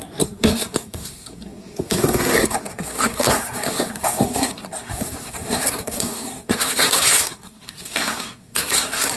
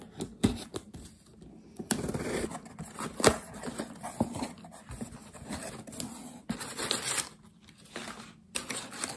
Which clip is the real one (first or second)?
second